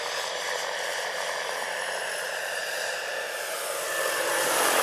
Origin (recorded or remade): remade